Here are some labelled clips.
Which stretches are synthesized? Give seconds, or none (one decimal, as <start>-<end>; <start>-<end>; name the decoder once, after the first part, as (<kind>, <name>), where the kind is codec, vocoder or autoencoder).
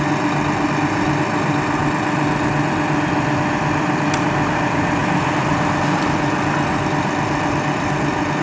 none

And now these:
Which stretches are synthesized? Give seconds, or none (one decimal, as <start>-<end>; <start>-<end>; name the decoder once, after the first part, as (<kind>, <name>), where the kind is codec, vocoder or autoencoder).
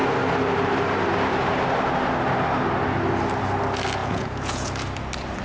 4.0-4.7 (vocoder, Vocos)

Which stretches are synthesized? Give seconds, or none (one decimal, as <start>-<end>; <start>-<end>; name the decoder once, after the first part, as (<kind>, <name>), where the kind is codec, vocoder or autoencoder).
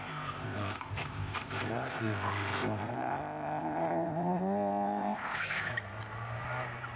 0.0-5.7 (codec, ZipCodec)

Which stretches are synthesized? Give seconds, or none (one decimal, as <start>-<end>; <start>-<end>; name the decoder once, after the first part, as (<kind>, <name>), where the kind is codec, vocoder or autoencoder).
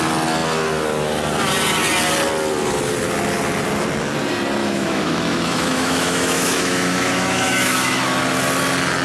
4.6-8.0 (autoencoder, DAC-VAE)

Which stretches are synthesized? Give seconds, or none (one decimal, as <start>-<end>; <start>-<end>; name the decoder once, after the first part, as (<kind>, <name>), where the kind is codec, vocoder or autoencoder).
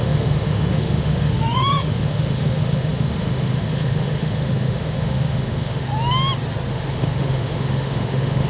0.0-5.9 (autoencoder, DAC-VAE); 6.7-8.5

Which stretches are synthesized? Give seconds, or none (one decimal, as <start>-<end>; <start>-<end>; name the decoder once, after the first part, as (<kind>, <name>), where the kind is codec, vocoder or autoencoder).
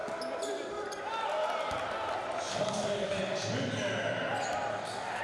2.5-3.2 (codec, DAC); 4.7-5.2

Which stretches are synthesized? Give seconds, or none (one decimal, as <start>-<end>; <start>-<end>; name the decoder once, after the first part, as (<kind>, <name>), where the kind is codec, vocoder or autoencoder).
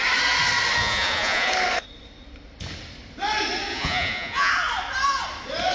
0.8-1.5 (vocoder, Vocos); 3.7-4.5